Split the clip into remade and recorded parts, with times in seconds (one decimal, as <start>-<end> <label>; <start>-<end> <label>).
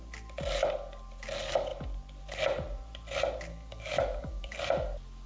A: 0.0-3.5 recorded; 3.5-4.6 remade; 4.6-5.3 recorded